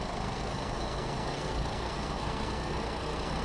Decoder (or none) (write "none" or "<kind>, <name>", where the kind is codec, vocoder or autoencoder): codec, SNAC